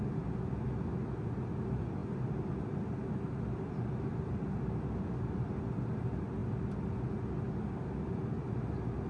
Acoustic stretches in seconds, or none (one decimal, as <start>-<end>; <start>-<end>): 0.0-9.1